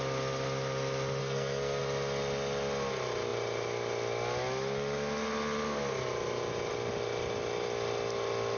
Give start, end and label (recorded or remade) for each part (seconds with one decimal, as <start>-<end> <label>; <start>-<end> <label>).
0.0-1.2 recorded; 1.2-1.8 remade; 1.8-8.6 recorded